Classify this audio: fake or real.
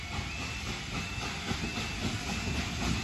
real